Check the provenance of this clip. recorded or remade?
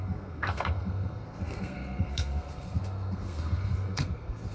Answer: remade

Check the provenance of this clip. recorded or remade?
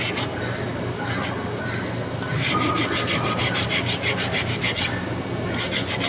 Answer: recorded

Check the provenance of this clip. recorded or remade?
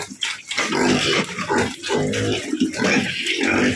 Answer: recorded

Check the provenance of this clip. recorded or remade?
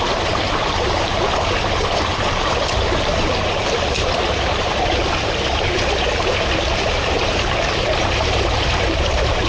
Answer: remade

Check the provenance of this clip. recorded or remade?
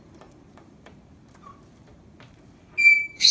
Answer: remade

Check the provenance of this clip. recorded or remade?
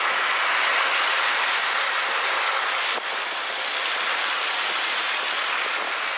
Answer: recorded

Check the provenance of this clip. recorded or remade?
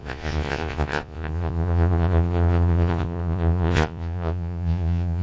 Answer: remade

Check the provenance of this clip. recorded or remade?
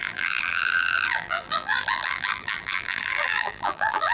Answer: remade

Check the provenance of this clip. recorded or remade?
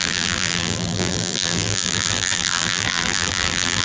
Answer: remade